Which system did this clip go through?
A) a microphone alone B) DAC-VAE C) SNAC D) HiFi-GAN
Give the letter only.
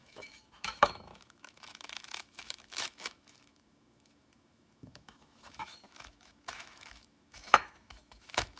B